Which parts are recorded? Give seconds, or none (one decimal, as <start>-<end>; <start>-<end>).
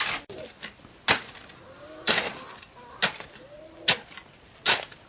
0.0-5.1